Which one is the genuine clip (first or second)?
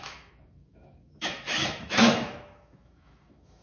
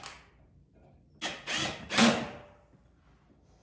second